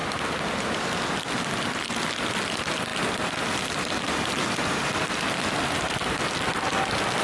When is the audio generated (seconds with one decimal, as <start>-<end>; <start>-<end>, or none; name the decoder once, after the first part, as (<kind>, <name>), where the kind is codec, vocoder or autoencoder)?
none